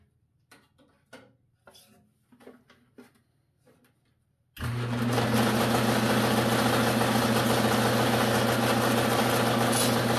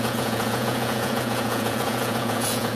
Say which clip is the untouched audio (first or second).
first